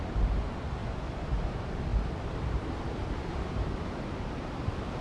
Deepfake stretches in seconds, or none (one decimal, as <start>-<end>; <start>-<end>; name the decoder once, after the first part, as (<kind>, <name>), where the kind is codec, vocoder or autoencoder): 0.0-0.8 (vocoder, BigVGAN v2); 1.5-1.9; 2.4-3.0; 4.6-5.0